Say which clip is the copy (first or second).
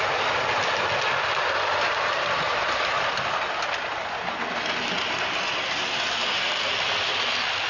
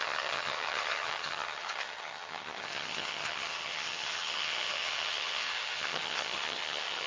second